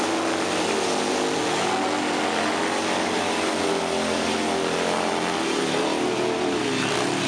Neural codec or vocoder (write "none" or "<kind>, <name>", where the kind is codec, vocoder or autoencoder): none